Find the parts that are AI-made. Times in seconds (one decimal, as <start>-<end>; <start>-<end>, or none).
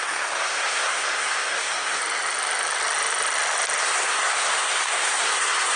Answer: 0.0-2.0; 3.8-5.8